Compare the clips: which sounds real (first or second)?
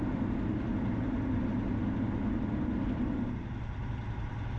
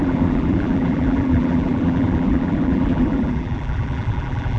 first